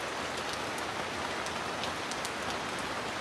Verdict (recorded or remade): recorded